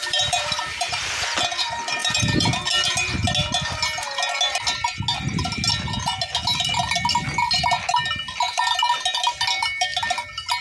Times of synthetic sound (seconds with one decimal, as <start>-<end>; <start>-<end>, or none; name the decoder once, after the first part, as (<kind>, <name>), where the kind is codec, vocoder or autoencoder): 0.0-1.1 (vocoder, BigVGAN v2); 2.0-2.5